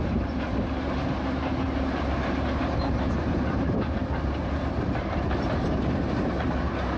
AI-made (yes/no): yes